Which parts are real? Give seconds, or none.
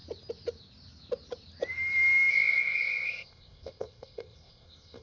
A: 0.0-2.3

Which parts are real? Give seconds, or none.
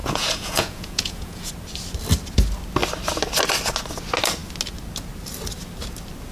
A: 1.5-6.3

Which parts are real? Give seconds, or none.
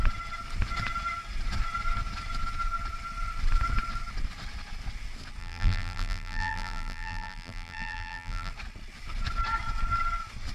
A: 0.0-5.4; 8.5-10.5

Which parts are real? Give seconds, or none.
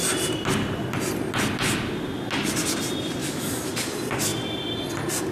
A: 0.0-3.2; 3.7-5.3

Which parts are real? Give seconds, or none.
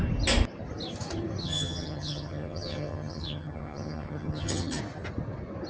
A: 0.0-1.4; 4.8-5.7